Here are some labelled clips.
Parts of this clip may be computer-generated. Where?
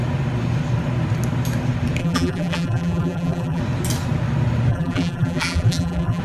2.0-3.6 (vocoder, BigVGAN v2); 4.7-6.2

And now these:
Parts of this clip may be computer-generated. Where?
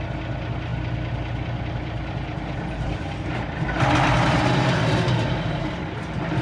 0.7-4.5 (vocoder, BigVGAN v2)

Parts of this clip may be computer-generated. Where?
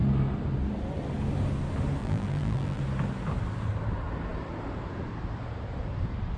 2.0-2.8 (vocoder, BigVGAN v2)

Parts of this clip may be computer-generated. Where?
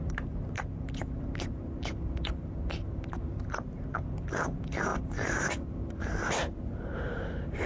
0.0-7.7 (vocoder, BigVGAN v2)